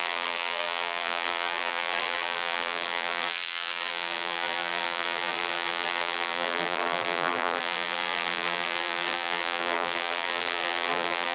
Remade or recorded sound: remade